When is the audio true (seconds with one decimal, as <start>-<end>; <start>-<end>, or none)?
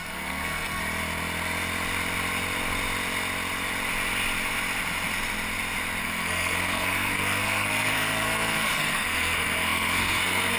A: 0.8-6.0